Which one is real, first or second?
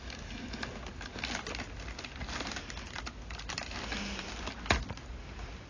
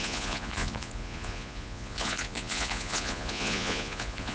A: first